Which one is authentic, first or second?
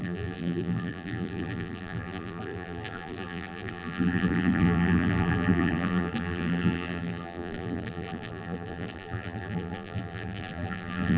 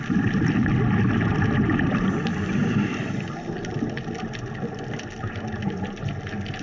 second